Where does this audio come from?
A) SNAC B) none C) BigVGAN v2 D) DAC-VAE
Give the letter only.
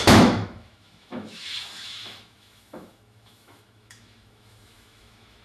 D